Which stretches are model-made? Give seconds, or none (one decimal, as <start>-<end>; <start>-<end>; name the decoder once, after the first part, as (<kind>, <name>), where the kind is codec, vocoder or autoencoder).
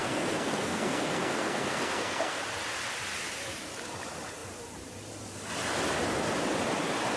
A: 0.0-2.4 (codec, SNAC)